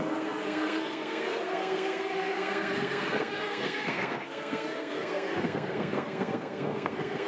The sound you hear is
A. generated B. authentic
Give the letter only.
A